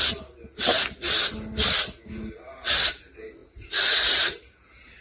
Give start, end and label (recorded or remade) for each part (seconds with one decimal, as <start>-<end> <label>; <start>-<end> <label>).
0.0-5.0 recorded